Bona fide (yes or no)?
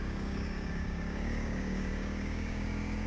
no